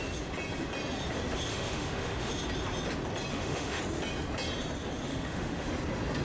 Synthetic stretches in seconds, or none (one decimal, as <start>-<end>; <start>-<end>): 1.5-2.3; 3.3-3.8; 5.1-5.7

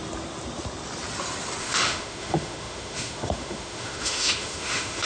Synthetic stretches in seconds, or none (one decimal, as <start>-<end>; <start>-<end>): 1.6-5.1

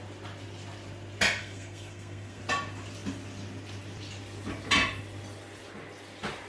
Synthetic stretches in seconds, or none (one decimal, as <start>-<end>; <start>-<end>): 1.4-2.4

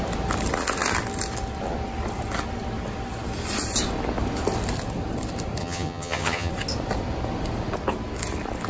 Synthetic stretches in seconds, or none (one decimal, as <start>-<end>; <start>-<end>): 5.6-6.5

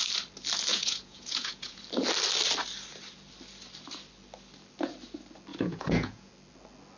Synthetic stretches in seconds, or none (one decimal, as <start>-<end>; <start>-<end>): 0.7-1.8; 5.5-6.3

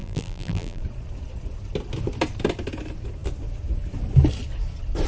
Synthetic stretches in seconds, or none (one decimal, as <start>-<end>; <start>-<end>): 0.0-0.8

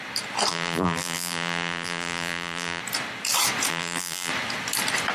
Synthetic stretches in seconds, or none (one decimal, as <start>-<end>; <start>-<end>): 0.5-2.8; 3.7-4.3